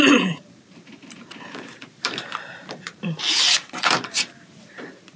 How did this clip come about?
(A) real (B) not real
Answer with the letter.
B